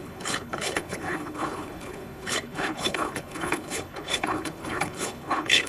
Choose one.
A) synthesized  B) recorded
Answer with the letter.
A